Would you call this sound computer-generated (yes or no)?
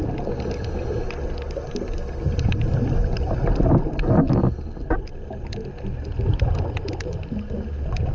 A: no